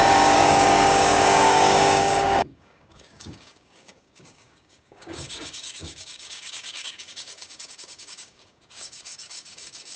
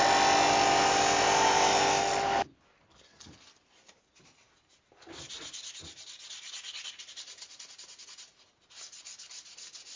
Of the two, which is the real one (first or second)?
second